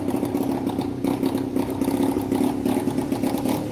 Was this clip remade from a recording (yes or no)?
no